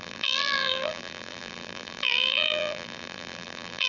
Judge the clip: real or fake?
fake